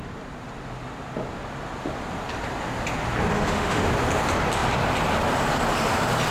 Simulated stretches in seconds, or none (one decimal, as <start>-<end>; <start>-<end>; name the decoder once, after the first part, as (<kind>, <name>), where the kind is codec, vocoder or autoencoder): 3.3-3.9 (autoencoder, DAC-VAE)